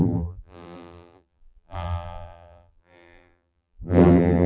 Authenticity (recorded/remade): remade